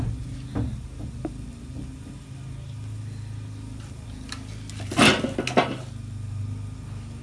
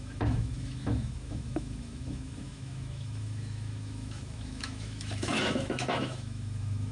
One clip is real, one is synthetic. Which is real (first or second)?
first